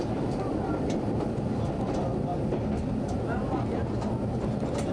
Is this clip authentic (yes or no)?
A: yes